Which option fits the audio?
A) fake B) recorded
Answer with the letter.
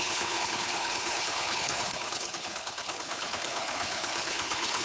A